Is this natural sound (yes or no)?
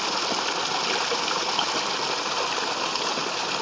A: yes